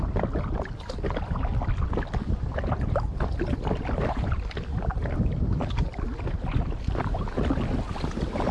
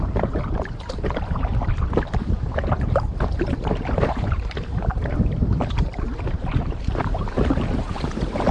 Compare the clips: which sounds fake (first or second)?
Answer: second